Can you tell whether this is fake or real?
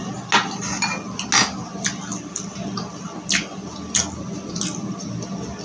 real